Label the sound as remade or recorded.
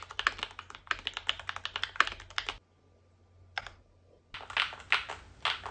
recorded